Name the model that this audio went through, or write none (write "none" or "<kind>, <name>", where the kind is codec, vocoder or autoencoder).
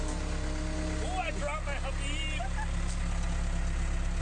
none